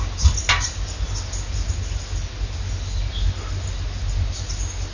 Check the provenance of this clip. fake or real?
real